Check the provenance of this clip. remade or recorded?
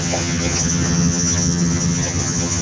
remade